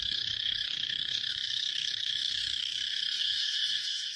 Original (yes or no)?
no